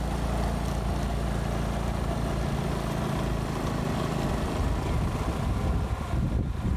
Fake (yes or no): no